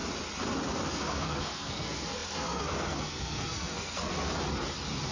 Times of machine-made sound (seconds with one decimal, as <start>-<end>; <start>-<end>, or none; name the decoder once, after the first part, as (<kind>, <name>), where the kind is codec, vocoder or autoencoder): 0.9-4.1 (codec, SNAC)